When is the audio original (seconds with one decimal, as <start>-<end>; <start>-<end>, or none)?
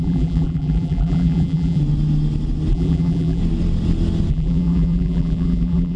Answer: 1.8-2.7; 3.4-4.3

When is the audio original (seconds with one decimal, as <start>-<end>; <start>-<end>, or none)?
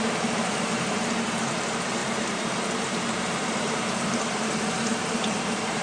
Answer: none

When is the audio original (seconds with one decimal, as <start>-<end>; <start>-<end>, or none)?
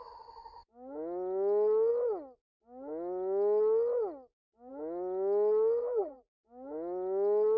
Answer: 0.0-5.8; 6.3-7.6